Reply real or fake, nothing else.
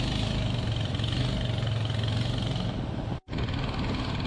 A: real